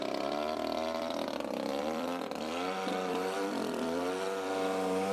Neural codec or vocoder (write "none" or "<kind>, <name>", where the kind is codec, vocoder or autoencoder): vocoder, BigVGAN v2